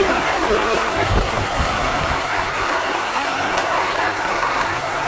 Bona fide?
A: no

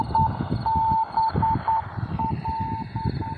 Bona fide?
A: yes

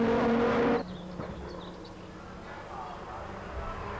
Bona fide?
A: yes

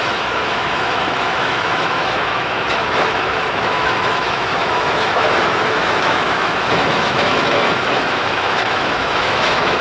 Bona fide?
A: no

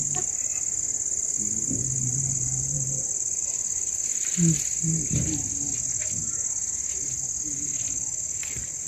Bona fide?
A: yes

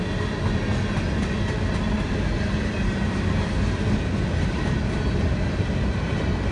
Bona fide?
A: yes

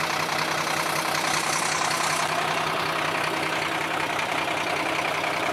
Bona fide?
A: yes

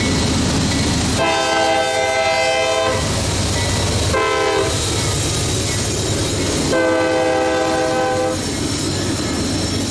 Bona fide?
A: yes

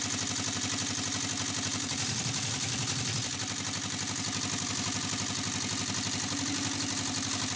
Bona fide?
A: yes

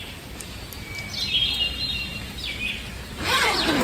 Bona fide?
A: yes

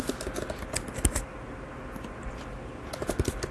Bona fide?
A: yes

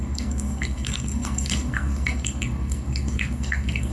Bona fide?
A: no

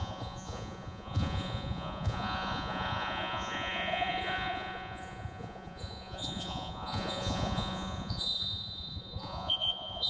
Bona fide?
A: no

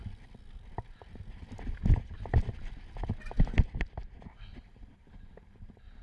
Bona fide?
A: yes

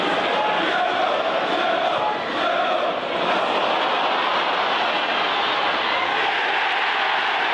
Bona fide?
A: yes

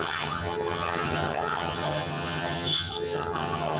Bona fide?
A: no